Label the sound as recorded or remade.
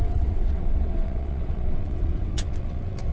remade